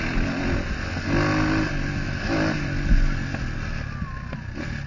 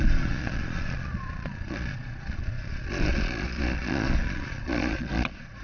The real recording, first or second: first